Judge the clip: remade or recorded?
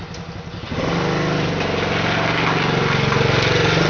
recorded